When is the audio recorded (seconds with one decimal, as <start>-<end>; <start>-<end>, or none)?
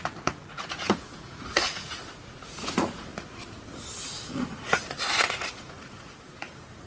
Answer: 3.1-4.4